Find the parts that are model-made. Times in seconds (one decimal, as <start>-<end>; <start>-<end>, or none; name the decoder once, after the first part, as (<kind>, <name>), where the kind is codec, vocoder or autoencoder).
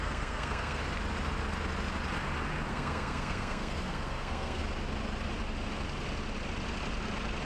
0.0-0.8 (codec, SNAC); 2.7-4.6